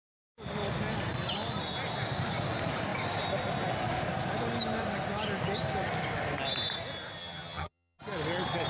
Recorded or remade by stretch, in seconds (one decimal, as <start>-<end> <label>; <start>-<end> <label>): 0.0-7.2 recorded; 7.2-8.0 remade; 8.0-8.7 recorded